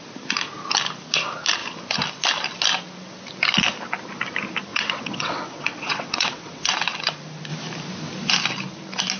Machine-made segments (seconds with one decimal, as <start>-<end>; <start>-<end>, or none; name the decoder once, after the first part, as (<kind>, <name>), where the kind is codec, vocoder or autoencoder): 4.7-6.7 (vocoder, WaveNeXt)

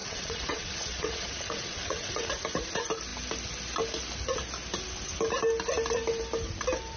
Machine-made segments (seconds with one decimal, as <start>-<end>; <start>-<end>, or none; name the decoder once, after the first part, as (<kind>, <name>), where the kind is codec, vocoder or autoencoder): 0.0-2.3 (vocoder, WaveNeXt)

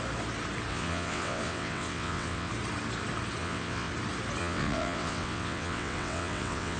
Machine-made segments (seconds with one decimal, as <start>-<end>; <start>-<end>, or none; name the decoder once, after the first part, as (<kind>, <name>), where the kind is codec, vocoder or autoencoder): 0.7-2.5 (vocoder, WaveNeXt); 3.4-3.9; 4.4-6.8

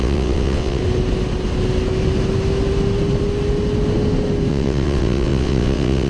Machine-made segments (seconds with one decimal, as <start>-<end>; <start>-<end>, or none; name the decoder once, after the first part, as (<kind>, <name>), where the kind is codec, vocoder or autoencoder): 0.0-0.8 (vocoder, WaveNeXt); 4.5-6.1

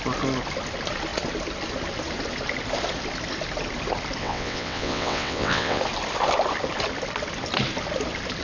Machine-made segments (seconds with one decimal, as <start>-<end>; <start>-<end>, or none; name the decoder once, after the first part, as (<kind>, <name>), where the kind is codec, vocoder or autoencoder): 4.2-5.8 (vocoder, WaveNeXt)

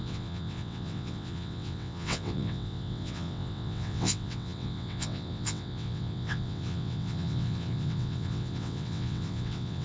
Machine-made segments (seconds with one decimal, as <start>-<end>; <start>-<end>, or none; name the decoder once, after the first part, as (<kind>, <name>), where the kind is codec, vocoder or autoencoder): 0.0-9.8 (vocoder, WaveNeXt)

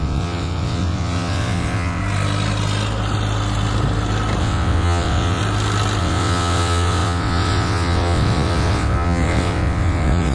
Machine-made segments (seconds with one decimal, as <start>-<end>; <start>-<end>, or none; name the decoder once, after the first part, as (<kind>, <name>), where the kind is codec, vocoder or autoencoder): 0.0-2.0 (vocoder, WaveNeXt); 4.4-5.4; 6.0-10.3